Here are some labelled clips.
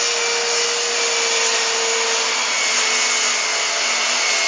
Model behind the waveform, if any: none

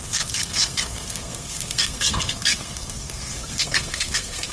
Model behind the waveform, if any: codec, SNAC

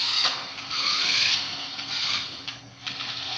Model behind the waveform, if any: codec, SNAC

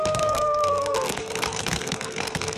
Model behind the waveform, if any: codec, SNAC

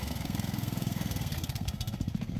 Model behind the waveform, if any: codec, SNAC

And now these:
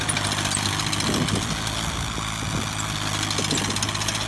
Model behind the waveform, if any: none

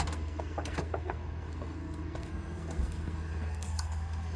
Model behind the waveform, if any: codec, SNAC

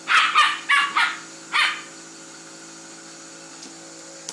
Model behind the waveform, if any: none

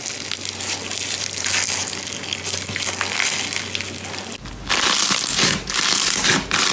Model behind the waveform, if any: none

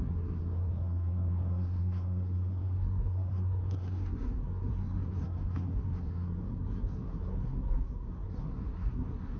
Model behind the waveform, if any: codec, SNAC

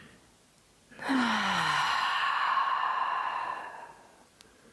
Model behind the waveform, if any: none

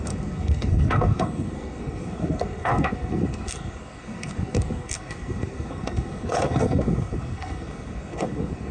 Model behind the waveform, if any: codec, SNAC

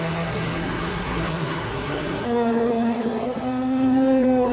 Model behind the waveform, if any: codec, SNAC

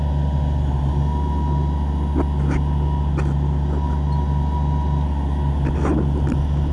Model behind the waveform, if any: none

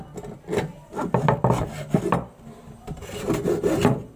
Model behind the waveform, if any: none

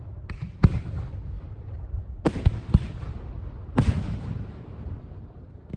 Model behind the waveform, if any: none